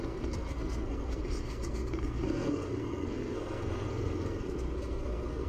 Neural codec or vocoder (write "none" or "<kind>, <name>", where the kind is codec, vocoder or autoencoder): codec, SNAC